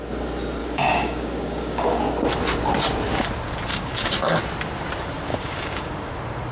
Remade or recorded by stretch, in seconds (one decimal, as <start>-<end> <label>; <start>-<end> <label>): 0.0-0.6 recorded; 0.6-2.0 remade; 2.0-3.7 recorded; 3.7-4.2 remade; 4.2-5.3 recorded; 5.3-6.1 remade; 6.1-6.5 recorded